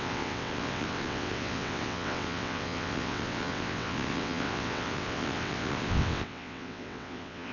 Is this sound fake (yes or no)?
yes